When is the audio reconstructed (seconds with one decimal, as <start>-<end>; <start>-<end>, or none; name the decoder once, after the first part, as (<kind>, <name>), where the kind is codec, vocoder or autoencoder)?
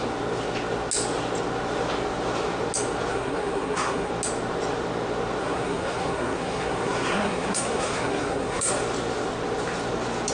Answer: 3.1-4.1 (codec, SNAC); 5.4-8.7